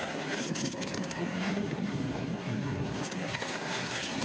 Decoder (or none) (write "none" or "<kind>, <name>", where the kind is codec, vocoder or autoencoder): codec, SNAC